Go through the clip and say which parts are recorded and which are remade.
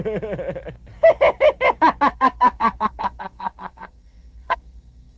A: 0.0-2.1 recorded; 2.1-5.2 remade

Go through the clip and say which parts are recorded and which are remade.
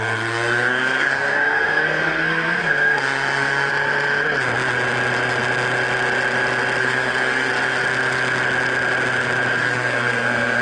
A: 0.0-3.7 remade; 3.7-6.8 recorded; 6.8-7.5 remade; 7.5-9.6 recorded; 9.6-10.6 remade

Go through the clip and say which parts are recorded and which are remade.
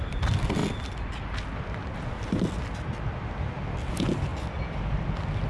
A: 0.0-5.5 recorded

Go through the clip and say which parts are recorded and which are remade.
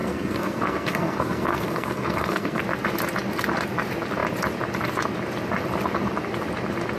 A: 0.0-2.6 remade; 2.6-7.0 recorded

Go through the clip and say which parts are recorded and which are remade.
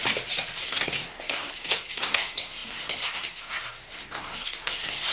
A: 0.0-0.6 recorded; 0.6-5.1 remade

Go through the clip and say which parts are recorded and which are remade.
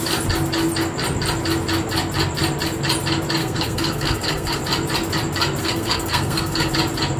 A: 0.0-3.4 recorded; 3.4-4.6 remade; 4.6-5.6 recorded; 5.6-6.7 remade; 6.7-7.2 recorded